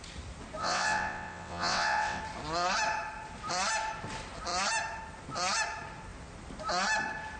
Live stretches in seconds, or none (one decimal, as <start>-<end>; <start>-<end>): 0.0-0.6; 2.2-7.4